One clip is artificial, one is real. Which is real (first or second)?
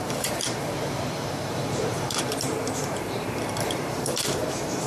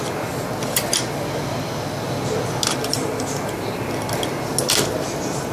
second